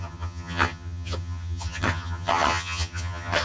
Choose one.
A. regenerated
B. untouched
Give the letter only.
A